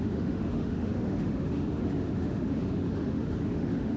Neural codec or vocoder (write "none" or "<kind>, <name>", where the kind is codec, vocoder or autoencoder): autoencoder, DAC-VAE